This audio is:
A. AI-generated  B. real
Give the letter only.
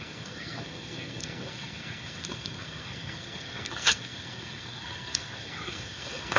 A